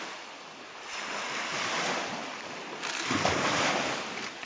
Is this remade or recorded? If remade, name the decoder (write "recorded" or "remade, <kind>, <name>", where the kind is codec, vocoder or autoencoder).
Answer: recorded